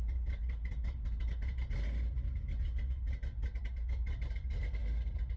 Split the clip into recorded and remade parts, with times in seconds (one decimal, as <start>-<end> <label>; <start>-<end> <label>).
0.0-5.4 recorded